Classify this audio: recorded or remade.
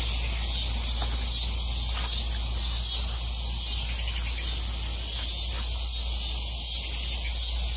recorded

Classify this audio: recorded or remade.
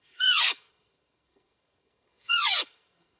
remade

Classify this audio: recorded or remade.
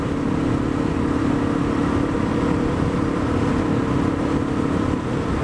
recorded